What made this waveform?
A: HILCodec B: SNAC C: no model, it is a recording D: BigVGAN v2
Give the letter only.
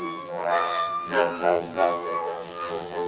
D